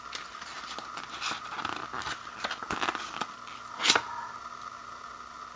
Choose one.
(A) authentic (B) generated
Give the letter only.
A